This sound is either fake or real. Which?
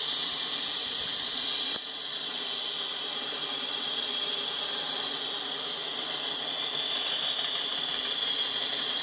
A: real